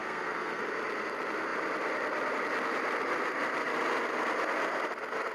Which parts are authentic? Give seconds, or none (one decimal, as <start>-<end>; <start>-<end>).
0.6-5.3